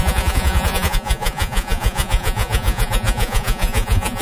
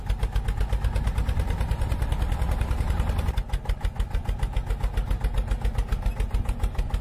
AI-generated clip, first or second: first